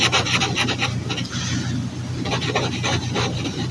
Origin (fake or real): real